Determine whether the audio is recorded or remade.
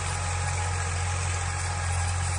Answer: recorded